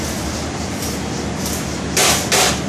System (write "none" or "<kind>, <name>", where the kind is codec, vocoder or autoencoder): none